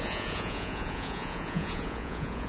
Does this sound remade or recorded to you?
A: remade